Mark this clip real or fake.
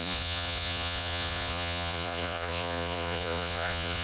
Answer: fake